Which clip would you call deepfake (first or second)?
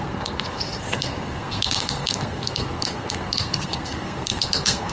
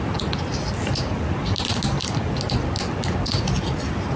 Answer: first